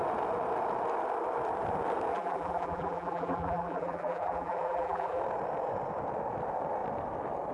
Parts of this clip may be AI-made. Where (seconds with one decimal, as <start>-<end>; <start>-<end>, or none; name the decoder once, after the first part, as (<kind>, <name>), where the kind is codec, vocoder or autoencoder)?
2.1-5.2 (vocoder, BigVGAN v2)